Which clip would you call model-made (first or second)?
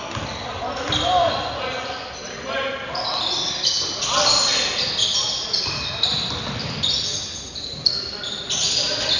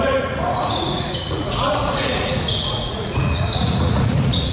second